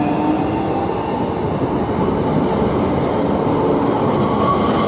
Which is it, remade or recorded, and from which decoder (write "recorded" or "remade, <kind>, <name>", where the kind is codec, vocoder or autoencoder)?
recorded